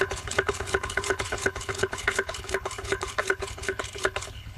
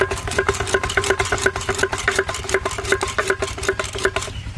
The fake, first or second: first